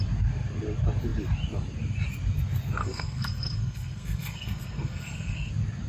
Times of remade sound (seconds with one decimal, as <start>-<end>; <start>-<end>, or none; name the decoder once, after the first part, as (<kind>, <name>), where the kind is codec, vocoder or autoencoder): 2.8-5.5 (codec, SNAC)